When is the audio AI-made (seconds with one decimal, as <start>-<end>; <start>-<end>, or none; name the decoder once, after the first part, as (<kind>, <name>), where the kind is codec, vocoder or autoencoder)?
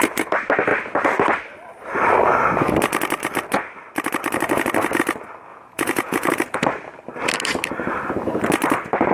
5.5-6.3 (vocoder, Vocos)